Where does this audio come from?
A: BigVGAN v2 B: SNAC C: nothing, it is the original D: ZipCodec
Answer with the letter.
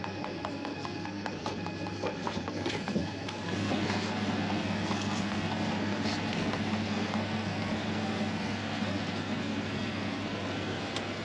B